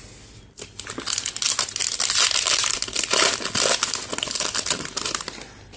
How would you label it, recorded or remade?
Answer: recorded